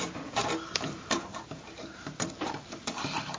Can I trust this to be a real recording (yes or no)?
no